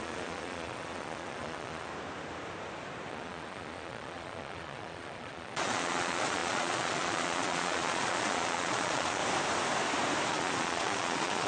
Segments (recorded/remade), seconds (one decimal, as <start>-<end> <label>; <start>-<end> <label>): 0.0-1.9 remade; 1.9-3.1 recorded; 3.1-9.2 remade; 9.2-10.3 recorded; 10.3-11.5 remade